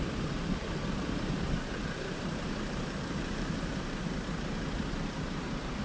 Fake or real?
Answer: fake